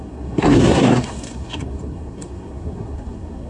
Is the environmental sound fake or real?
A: fake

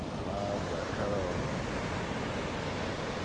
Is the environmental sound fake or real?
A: real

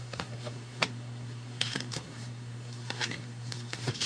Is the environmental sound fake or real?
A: fake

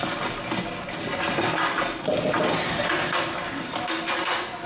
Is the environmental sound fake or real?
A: real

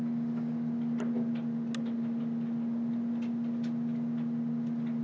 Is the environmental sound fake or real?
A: real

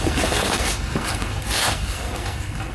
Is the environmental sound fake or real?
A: fake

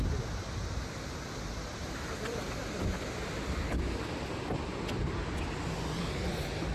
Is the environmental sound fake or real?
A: real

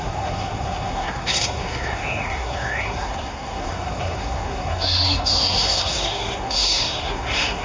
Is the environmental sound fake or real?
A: fake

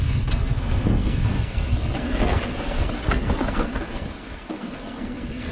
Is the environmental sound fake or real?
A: fake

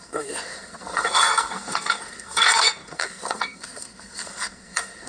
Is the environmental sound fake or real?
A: fake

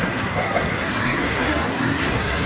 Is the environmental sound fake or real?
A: fake